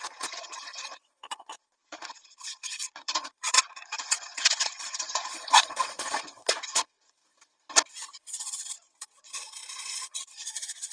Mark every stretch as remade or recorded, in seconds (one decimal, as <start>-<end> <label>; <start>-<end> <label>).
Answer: 0.0-7.2 remade; 7.2-8.1 recorded; 8.1-10.9 remade